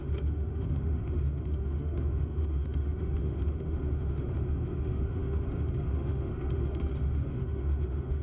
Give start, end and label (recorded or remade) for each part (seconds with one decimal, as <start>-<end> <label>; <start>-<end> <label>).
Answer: 0.0-8.2 remade